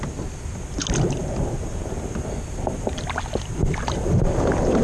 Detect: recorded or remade recorded